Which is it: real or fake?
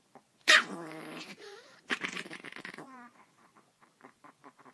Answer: fake